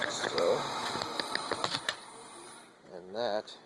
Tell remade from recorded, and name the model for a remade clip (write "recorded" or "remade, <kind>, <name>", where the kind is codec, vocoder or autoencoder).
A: recorded